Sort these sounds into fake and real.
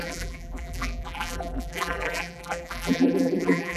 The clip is fake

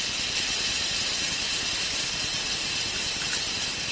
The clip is real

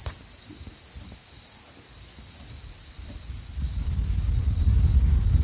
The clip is real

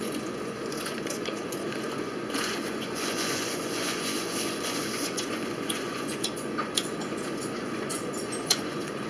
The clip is fake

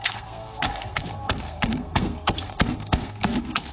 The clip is fake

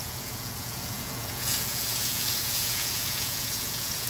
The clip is fake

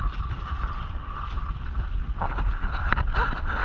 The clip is real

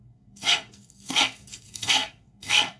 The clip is fake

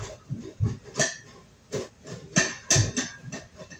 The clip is real